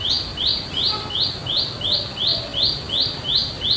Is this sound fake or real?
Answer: real